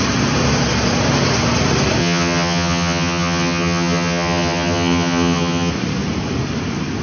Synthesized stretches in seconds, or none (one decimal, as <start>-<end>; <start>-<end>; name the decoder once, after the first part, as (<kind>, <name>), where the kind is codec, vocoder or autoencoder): 2.0-5.7 (vocoder, HiFi-GAN)